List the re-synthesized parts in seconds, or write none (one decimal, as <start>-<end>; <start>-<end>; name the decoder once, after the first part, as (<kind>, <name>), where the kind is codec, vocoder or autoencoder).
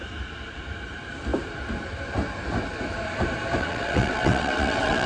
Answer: 3.6-5.1 (vocoder, WaveNeXt)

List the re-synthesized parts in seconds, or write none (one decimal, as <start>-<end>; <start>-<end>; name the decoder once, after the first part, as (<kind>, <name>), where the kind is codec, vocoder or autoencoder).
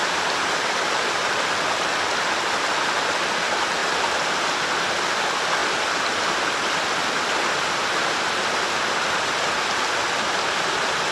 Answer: 0.0-1.3 (vocoder, BigVGAN v2)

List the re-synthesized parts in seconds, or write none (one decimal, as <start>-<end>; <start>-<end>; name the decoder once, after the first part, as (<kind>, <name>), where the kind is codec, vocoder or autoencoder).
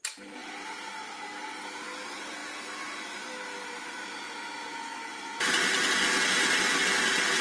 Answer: 0.4-0.9 (vocoder, BigVGAN v2)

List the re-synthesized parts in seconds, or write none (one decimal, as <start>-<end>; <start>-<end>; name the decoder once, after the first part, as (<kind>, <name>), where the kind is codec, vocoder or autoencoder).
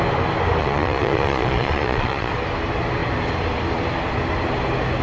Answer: 0.6-2.3 (vocoder, Vocos)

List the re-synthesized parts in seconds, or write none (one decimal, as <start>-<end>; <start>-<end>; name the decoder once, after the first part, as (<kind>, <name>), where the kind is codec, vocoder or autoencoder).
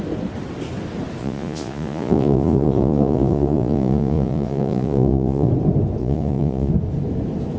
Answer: 1.2-5.5 (vocoder, Vocos); 6.0-6.7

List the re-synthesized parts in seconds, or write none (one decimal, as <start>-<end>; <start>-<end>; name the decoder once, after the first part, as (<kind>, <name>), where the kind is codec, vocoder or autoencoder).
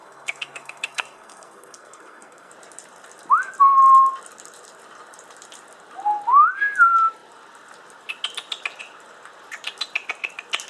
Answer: 0.0-2.5 (codec, SNAC)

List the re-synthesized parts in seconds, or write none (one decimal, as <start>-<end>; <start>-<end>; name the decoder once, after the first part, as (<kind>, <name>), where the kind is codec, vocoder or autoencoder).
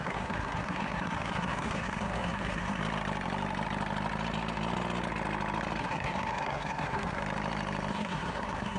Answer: 0.0-2.8 (codec, SNAC); 5.8-7.2; 7.9-8.8